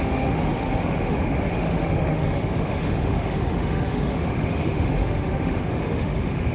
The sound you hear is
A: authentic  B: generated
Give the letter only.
B